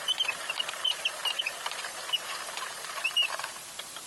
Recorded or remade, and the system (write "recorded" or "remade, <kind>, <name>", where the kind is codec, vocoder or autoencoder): remade, vocoder, BigVGAN v2